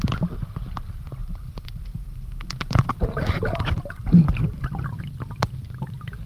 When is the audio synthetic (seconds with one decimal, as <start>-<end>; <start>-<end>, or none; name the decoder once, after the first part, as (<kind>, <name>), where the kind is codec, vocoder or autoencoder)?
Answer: 1.2-5.0 (vocoder, BigVGAN v2)